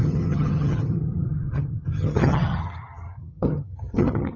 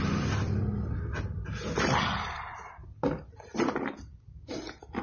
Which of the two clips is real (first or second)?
second